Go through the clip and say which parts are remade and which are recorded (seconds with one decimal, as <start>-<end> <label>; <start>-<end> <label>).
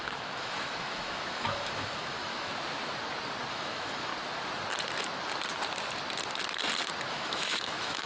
0.0-2.5 remade; 2.5-3.5 recorded; 3.5-4.1 remade; 4.1-7.1 recorded; 7.1-8.1 remade